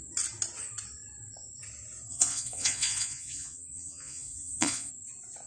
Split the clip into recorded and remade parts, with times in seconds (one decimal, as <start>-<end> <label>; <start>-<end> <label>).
0.0-2.1 recorded; 2.1-4.9 remade; 4.9-5.5 recorded